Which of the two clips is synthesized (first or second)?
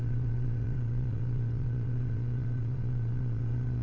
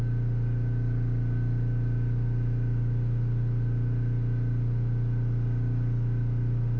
first